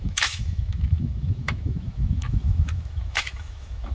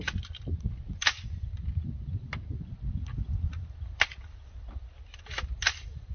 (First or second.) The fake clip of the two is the first